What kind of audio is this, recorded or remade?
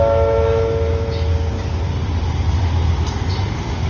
recorded